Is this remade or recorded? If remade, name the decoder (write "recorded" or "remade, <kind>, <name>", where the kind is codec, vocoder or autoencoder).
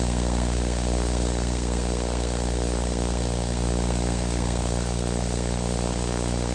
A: remade, codec, SNAC